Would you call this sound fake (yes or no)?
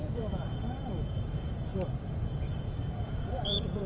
yes